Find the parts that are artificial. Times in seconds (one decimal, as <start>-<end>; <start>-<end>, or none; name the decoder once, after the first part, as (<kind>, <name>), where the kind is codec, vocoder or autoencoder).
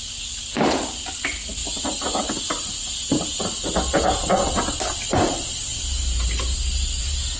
none